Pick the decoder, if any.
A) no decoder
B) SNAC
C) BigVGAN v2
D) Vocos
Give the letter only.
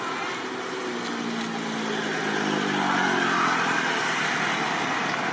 A